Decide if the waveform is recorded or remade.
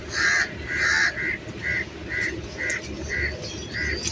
recorded